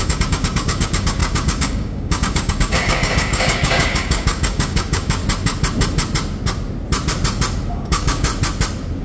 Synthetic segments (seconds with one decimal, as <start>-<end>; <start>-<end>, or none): 0.0-5.2; 7.7-8.3